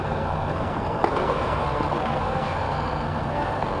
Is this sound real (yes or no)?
no